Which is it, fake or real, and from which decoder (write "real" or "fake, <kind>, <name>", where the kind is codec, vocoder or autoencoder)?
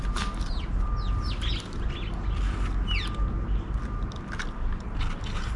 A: real